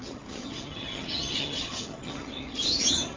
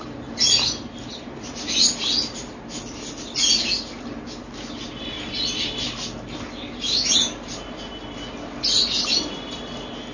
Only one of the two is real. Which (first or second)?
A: second